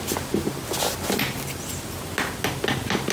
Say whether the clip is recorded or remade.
recorded